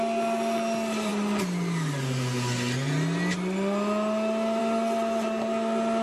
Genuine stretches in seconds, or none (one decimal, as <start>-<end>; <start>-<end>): 0.0-6.0